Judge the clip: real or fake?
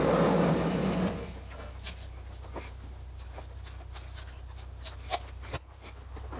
real